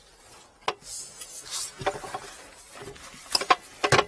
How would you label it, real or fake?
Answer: real